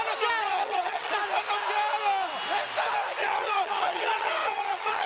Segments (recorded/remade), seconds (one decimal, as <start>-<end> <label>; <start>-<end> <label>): 0.0-0.4 recorded; 0.4-1.1 remade; 1.1-3.2 recorded; 3.2-5.1 remade